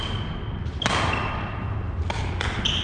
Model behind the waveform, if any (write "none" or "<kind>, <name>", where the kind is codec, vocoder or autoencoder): none